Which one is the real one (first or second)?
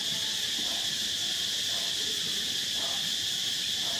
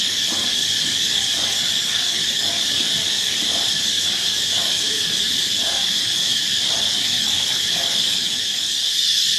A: first